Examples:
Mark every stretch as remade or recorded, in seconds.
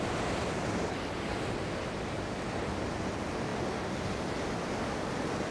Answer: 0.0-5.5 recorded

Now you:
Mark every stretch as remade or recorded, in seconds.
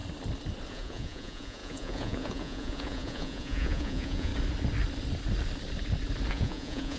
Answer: 0.0-0.7 recorded; 0.7-4.3 remade; 4.3-6.3 recorded; 6.3-7.0 remade